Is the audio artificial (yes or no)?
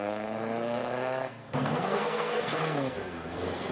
yes